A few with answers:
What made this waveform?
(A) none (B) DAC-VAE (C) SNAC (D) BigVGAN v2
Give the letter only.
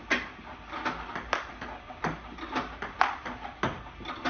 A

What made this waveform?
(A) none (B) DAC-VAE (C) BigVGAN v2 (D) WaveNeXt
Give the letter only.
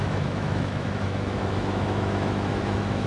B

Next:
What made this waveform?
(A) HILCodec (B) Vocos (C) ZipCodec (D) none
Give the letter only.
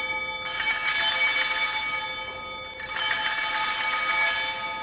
D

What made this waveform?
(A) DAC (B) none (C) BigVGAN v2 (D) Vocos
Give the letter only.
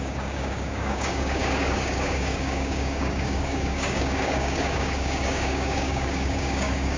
A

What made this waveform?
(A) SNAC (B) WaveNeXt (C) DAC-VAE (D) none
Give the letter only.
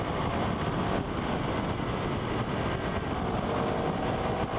D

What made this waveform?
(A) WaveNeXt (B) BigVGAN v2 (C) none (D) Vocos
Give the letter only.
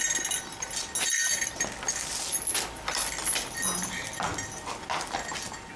C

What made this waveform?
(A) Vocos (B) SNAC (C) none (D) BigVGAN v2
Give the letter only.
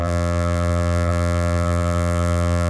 D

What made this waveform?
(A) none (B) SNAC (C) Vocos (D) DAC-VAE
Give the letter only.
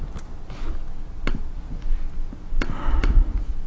A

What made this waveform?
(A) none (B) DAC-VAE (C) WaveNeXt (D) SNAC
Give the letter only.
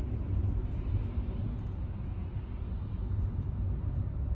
A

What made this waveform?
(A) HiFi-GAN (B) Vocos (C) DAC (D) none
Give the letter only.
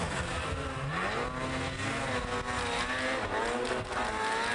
D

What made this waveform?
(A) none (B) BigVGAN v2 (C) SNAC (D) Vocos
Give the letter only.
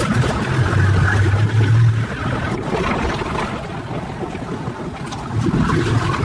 A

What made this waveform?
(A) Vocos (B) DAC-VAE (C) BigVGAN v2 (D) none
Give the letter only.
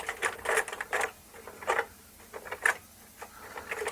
D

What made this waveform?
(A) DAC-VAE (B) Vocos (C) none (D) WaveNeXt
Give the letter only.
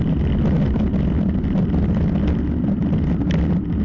C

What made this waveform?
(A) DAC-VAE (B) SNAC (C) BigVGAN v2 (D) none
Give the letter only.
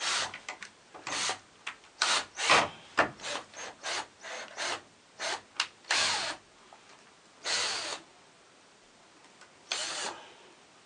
D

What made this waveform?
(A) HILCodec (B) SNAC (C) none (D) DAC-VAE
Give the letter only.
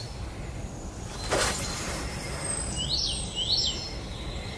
C